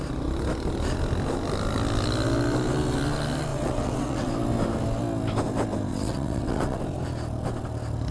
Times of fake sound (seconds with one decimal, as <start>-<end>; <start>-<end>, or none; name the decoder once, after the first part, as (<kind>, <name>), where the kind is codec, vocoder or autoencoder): 3.5-4.3 (vocoder, WaveNeXt); 5.9-6.8

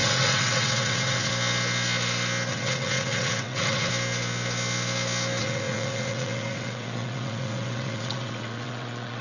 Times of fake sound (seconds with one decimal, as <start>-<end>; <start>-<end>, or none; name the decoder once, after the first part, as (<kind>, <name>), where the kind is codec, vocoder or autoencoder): 0.0-1.3 (vocoder, WaveNeXt); 2.5-3.9; 5.4-9.2

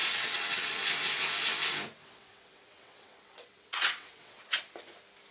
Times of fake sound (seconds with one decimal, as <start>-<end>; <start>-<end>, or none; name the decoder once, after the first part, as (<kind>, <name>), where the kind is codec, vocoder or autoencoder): 0.0-0.7 (vocoder, WaveNeXt); 2.0-4.4

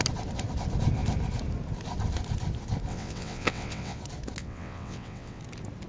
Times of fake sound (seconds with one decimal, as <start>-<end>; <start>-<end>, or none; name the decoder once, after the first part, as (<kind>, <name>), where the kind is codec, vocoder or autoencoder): 2.9-4.0 (vocoder, WaveNeXt); 4.4-5.4

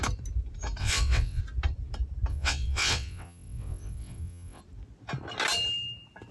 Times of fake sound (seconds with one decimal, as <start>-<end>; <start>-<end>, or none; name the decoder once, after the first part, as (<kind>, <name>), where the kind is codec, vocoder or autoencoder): 0.8-1.4 (vocoder, WaveNeXt); 2.3-4.6

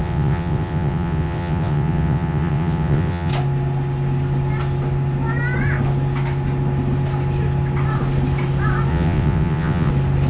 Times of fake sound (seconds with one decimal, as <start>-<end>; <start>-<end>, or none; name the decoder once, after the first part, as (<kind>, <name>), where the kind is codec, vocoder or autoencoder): 0.0-3.3 (vocoder, WaveNeXt); 8.9-9.9

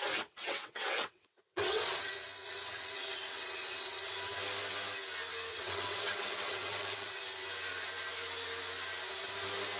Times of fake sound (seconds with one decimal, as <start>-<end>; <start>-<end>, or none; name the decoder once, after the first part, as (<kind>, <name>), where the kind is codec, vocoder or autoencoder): 0.4-4.1 (vocoder, WaveNeXt); 5.5-7.2